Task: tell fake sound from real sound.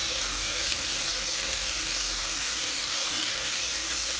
fake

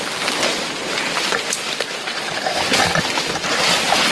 real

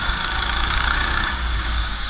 fake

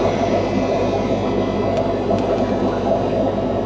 real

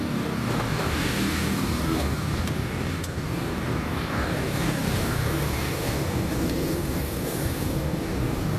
fake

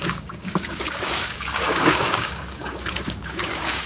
fake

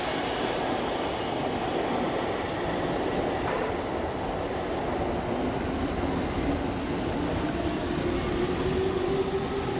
real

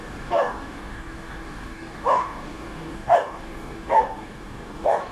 fake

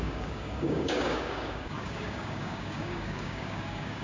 fake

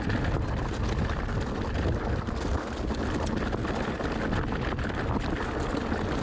real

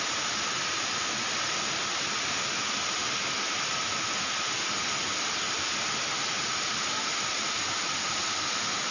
real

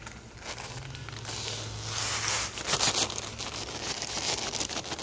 real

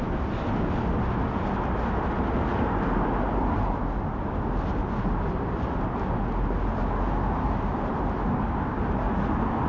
real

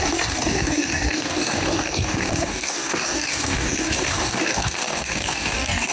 fake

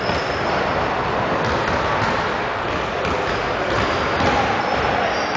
real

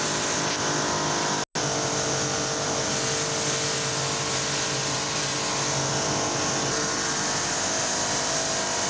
real